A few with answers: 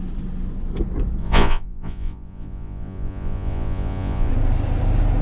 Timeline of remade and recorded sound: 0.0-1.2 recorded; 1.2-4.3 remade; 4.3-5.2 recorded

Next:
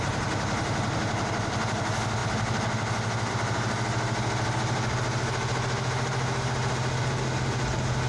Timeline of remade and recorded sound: 0.0-8.1 recorded

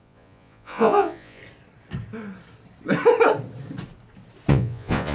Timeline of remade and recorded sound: 0.0-1.4 remade; 1.4-4.5 recorded; 4.5-5.1 remade